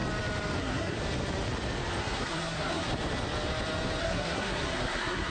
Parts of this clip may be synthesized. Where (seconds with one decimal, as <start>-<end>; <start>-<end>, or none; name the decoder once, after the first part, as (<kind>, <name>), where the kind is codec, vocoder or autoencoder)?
0.6-1.0 (codec, SNAC); 2.0-2.9; 4.0-5.3